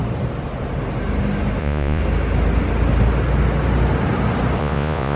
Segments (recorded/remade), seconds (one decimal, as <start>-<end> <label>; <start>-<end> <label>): 0.0-1.6 recorded; 1.6-2.0 remade; 2.0-4.6 recorded; 4.6-5.2 remade